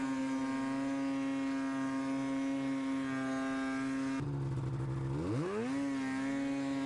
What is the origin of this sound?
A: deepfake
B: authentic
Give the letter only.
B